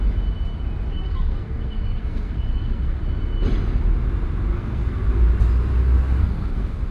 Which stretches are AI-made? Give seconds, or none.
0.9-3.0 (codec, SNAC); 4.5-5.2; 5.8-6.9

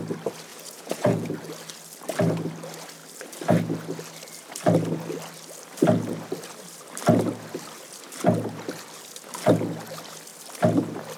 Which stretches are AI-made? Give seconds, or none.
0.5-1.3 (vocoder, Vocos)